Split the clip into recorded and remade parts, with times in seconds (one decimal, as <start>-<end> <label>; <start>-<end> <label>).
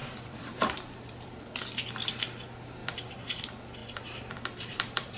0.0-1.7 remade; 1.7-2.8 recorded; 2.8-3.4 remade; 3.4-3.8 recorded; 3.8-5.2 remade